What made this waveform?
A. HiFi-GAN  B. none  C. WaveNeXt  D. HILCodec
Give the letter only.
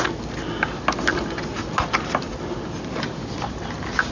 B